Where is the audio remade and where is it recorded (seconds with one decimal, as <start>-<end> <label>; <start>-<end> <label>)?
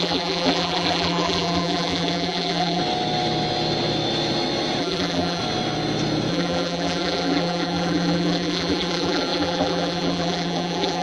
0.0-2.8 remade; 2.8-4.8 recorded; 4.8-5.4 remade; 5.4-6.3 recorded; 6.3-11.0 remade